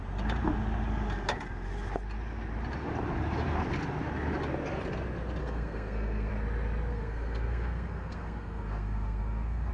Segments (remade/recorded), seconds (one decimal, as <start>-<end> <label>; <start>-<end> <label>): 0.0-5.4 recorded; 5.4-6.3 remade; 6.3-6.9 recorded; 6.9-9.7 remade